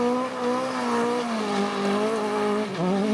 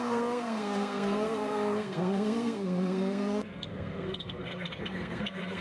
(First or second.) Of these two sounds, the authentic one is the first